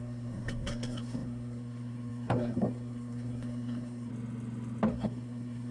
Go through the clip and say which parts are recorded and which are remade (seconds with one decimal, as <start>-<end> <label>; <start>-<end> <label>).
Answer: 0.0-4.1 remade; 4.1-4.9 recorded; 4.9-5.7 remade